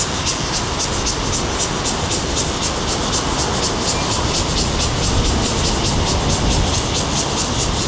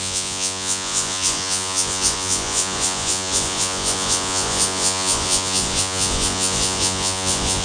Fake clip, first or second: second